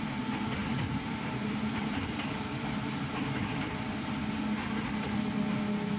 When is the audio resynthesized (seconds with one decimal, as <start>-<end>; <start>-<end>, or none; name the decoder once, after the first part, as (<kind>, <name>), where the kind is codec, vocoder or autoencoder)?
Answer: 0.6-4.2 (vocoder, BigVGAN v2)